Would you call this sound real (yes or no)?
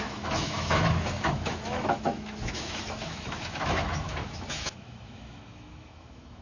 no